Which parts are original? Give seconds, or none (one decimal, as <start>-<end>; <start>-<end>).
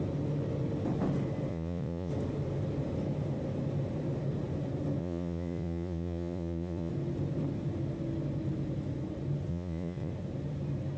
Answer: 0.0-1.5; 2.1-5.0; 6.9-9.5; 10.1-11.0